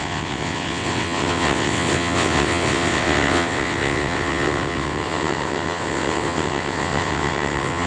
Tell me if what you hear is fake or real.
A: fake